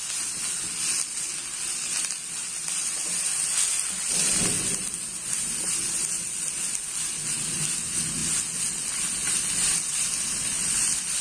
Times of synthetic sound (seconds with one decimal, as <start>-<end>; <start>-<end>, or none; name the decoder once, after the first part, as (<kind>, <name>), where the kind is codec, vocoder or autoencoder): none